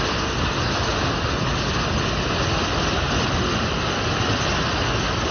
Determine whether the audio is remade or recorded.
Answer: recorded